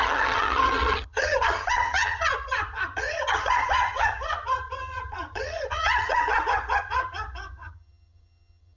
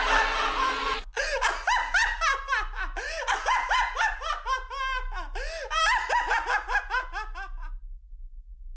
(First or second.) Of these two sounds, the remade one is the first